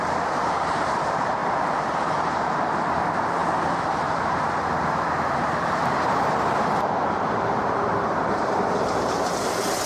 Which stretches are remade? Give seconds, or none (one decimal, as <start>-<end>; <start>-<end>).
0.0-9.9